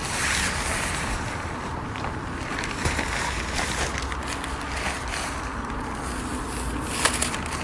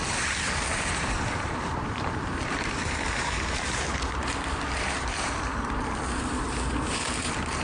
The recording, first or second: first